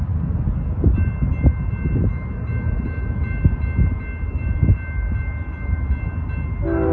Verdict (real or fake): real